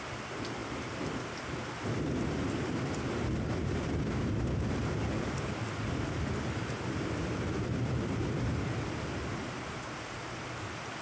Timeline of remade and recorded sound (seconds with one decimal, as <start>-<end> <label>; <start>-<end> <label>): 0.0-11.0 recorded